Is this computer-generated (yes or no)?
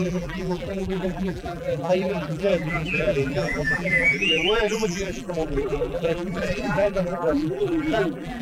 yes